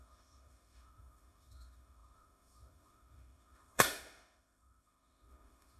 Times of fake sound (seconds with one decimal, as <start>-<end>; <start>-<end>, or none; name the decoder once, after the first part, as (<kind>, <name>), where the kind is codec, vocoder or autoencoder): 0.0-5.8 (autoencoder, DAC-VAE)